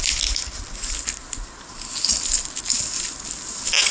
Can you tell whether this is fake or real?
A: real